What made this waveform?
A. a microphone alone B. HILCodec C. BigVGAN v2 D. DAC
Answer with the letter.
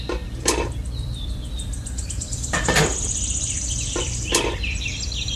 C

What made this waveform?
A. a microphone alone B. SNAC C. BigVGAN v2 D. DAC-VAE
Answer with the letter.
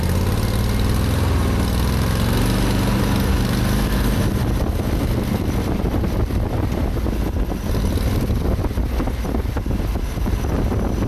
A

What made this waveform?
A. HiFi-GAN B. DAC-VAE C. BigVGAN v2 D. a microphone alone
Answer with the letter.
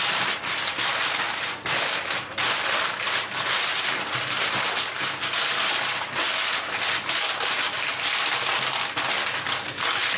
D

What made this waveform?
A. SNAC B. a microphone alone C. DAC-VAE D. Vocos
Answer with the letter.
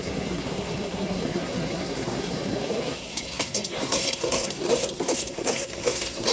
A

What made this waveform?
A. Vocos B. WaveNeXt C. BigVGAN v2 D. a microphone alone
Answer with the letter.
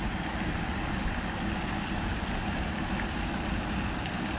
D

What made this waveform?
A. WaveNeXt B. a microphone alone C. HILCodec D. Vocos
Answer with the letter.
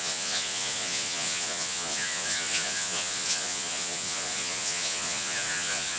D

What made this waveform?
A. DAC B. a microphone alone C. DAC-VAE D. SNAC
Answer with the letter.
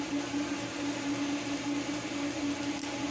B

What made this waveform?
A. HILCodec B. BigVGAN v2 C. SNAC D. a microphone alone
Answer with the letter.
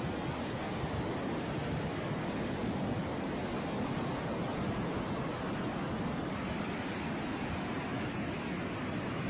D